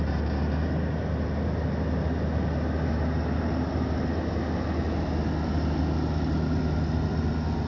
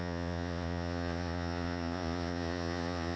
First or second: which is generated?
second